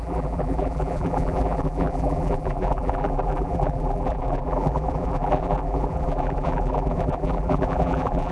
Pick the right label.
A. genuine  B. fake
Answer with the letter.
B